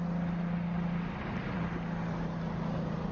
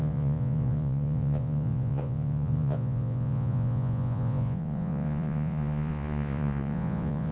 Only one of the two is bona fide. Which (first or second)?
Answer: first